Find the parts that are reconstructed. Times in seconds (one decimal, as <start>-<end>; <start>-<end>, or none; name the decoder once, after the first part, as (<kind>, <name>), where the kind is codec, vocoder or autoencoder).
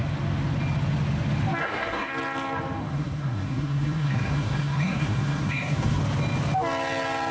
1.6-2.1 (codec, SNAC); 2.8-6.0